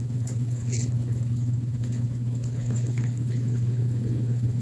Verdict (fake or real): fake